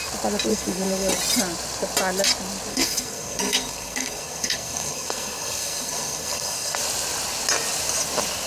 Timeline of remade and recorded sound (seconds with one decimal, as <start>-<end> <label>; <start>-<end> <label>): 0.0-0.5 recorded; 0.5-1.1 remade; 1.1-2.7 recorded; 2.7-6.8 remade; 6.8-8.5 recorded